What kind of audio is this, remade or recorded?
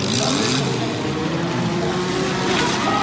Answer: recorded